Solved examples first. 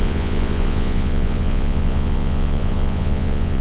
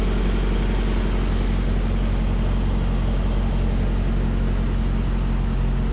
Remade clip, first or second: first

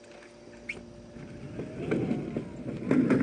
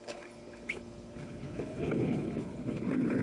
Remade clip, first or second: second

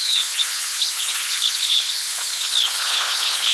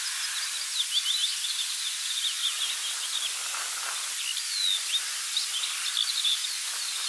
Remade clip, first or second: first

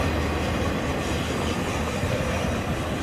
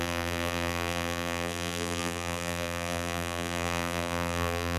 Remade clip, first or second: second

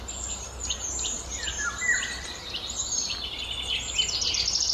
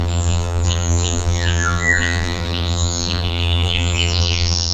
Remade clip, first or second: second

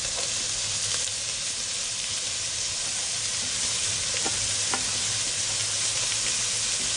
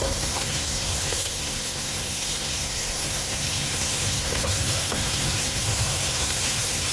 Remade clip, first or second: second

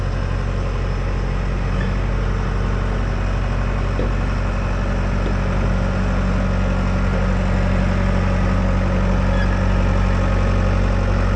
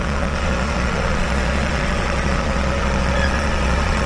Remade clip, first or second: second